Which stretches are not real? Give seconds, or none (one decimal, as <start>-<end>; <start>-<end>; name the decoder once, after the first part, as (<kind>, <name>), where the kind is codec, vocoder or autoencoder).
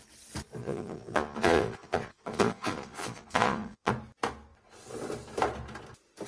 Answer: 0.6-3.9 (vocoder, Vocos)